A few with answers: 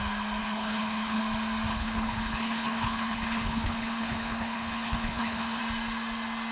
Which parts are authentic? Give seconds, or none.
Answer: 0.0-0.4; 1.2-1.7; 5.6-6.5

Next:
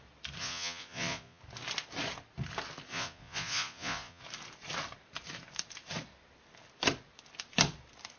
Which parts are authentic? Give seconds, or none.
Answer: 0.0-0.4; 1.4-2.9; 4.2-8.2

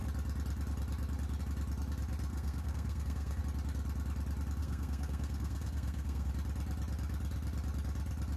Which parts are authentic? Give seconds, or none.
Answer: 0.0-2.3; 3.4-4.6; 6.3-8.4

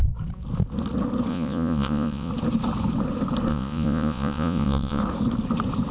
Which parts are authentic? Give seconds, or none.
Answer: 0.0-1.3; 2.3-3.5; 5.0-5.9

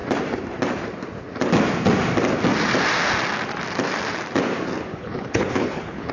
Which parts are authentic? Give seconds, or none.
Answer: 0.0-4.9

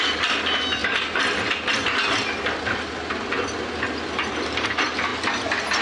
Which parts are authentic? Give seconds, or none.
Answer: 0.0-5.8

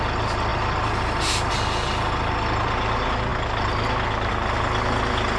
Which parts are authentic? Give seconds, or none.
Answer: 0.0-5.4

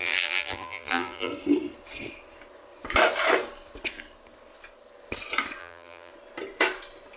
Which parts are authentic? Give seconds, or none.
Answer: 1.3-5.6; 6.1-7.2